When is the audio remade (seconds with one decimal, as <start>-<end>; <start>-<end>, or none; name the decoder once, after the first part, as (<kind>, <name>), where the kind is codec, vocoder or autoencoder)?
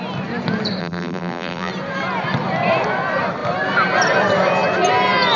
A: 0.8-1.7 (vocoder, BigVGAN v2)